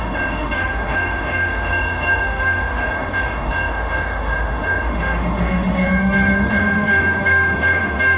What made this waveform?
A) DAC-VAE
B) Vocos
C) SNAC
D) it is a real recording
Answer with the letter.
A